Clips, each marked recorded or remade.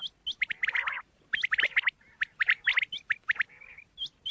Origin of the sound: recorded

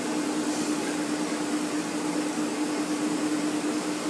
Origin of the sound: recorded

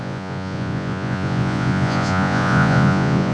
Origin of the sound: remade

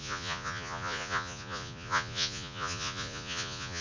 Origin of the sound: remade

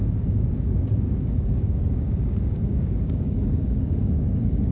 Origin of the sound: remade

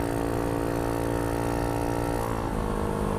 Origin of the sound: recorded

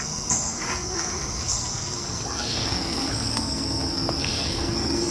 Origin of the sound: remade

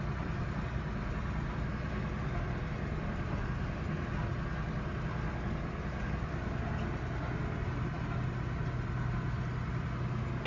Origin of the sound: recorded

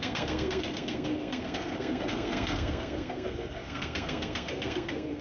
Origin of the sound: remade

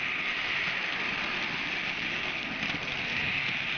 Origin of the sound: recorded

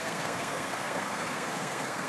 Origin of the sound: remade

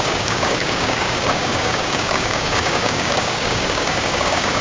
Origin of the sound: remade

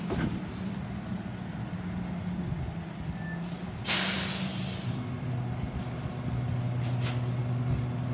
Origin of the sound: recorded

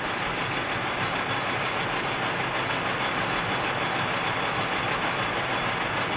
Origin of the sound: recorded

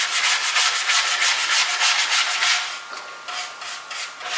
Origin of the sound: recorded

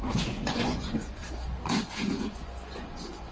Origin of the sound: remade